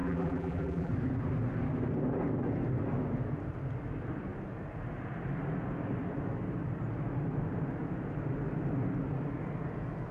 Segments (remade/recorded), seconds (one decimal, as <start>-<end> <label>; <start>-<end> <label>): 0.0-0.9 remade; 0.9-10.1 recorded